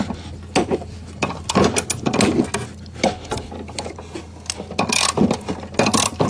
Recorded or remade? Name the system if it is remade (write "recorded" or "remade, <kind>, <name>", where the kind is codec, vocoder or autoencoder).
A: recorded